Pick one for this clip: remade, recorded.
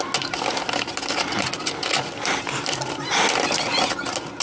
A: recorded